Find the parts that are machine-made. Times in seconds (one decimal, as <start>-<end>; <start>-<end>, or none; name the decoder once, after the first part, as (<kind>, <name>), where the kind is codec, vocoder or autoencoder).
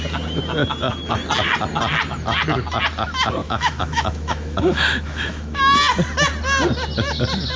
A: 3.4-5.6 (autoencoder, DAC-VAE)